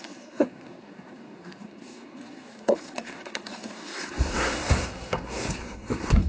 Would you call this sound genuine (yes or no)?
no